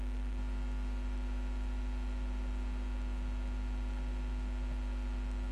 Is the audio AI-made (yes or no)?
no